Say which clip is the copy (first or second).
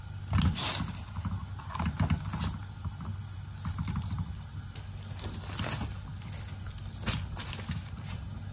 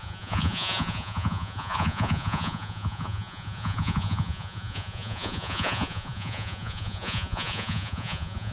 second